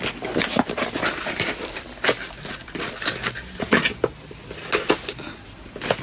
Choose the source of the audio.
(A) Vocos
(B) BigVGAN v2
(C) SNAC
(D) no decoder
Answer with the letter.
D